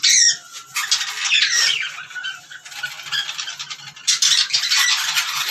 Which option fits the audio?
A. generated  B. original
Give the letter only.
B